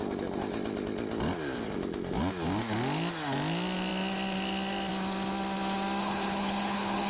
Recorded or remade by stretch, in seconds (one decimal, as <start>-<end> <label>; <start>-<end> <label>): 0.0-6.0 recorded; 6.0-7.1 remade